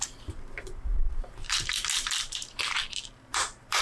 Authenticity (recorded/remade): remade